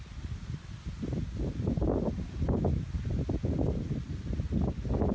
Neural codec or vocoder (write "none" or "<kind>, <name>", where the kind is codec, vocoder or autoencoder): none